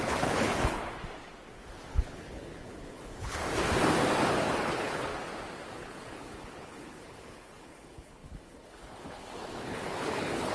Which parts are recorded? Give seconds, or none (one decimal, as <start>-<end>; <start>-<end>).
0.8-1.9; 3.4-4.4; 5.1-5.7